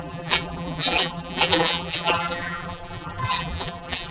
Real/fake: fake